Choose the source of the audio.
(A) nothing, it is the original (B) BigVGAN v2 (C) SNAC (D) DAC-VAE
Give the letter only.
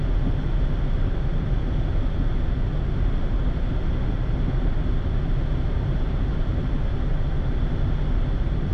A